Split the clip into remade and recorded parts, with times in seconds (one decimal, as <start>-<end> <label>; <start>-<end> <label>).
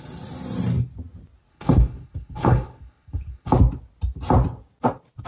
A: 0.0-1.5 recorded; 1.5-3.5 remade; 3.5-5.3 recorded